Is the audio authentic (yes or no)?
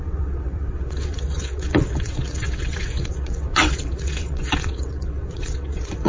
no